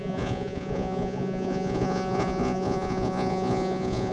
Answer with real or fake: fake